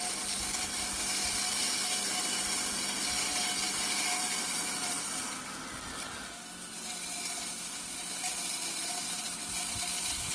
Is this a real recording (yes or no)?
yes